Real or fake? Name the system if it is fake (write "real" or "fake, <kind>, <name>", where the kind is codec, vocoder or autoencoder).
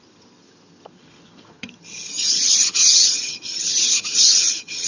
fake, vocoder, HiFi-GAN